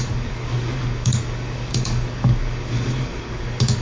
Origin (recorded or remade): remade